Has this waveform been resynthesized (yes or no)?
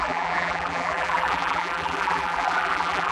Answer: yes